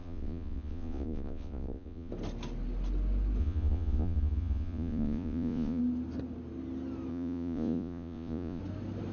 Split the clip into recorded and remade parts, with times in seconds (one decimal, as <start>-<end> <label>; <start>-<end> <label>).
0.0-2.1 remade; 2.1-3.4 recorded; 3.4-5.8 remade; 5.8-7.1 recorded; 7.1-8.6 remade; 8.6-9.1 recorded